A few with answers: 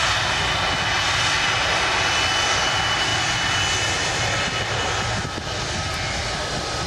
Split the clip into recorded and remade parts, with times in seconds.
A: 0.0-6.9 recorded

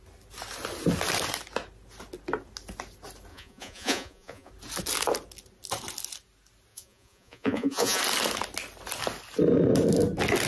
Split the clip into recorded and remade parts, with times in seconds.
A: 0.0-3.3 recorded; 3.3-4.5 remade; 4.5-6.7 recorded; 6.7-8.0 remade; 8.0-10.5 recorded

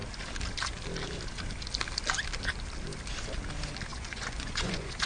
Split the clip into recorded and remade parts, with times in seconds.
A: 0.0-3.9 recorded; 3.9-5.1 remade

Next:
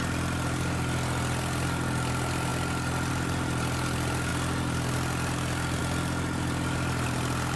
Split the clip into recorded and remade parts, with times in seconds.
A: 0.0-7.6 recorded

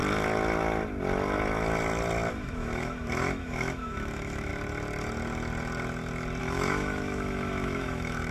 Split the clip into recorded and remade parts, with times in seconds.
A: 0.0-2.3 recorded; 2.3-4.5 remade; 4.5-6.4 recorded; 6.4-8.3 remade

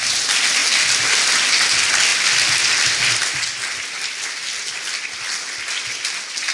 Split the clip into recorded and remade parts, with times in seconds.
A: 0.0-6.5 recorded